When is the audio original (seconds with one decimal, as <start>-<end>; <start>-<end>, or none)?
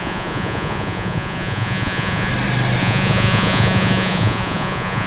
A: 2.3-2.8